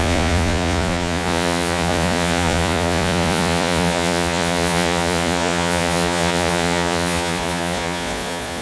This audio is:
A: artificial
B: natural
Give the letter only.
A